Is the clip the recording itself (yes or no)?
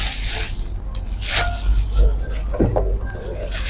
yes